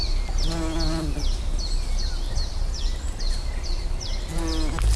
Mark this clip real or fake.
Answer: real